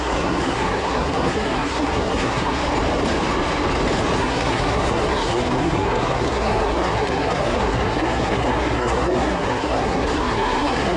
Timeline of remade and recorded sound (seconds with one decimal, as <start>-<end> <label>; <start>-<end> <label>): 0.0-2.6 remade; 2.6-4.2 recorded; 4.2-11.0 remade